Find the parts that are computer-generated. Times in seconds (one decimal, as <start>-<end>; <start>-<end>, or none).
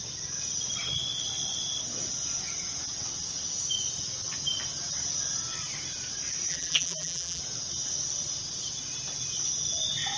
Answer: 6.5-7.4